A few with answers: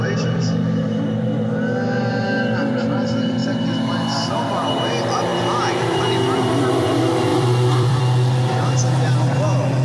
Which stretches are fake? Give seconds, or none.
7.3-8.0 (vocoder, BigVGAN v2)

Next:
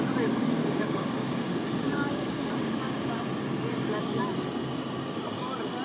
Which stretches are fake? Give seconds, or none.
0.6-3.1 (codec, DAC)

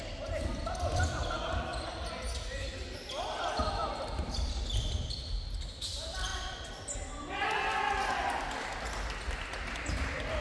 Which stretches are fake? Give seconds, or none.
3.8-4.5 (vocoder, BigVGAN v2)

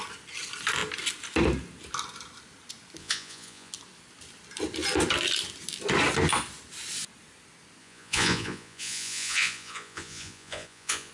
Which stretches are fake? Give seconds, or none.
3.0-3.7 (vocoder, Vocos); 7.8-11.1

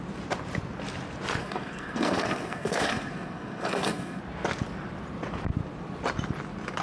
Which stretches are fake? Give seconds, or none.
1.4-4.2 (codec, SNAC)

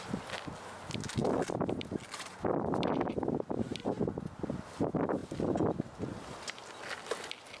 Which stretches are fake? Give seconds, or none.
none

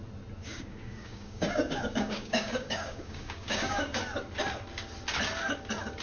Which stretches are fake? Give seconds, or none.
0.4-4.0 (codec, DAC)